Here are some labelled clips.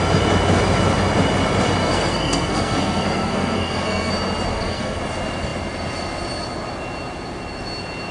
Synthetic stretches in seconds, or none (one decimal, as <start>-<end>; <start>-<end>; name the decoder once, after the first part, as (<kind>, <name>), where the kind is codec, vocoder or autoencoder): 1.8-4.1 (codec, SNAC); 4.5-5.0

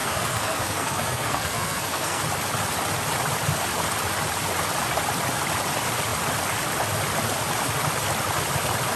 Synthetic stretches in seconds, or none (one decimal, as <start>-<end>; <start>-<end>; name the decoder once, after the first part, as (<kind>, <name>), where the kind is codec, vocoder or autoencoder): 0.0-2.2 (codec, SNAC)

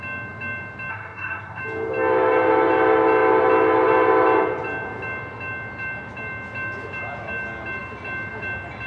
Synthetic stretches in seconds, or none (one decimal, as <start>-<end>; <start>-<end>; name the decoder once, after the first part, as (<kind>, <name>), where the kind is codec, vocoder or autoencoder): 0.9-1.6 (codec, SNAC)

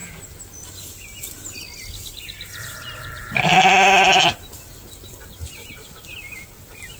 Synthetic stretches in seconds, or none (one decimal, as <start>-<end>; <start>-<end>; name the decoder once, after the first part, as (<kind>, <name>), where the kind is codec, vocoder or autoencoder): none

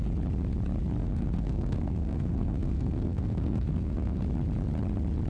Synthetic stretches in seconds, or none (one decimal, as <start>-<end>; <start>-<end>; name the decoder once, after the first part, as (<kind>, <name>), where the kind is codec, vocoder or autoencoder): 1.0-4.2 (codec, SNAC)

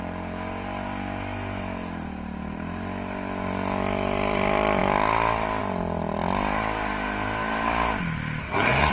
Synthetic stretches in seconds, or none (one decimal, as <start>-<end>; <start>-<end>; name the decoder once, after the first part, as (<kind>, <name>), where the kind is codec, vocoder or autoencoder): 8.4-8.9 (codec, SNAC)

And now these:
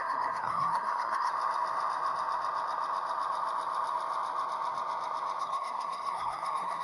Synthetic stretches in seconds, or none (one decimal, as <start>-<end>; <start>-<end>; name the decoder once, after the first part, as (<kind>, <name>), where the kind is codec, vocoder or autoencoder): 0.0-1.3 (codec, SNAC); 5.4-6.8